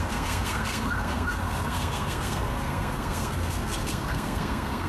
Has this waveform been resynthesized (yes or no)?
yes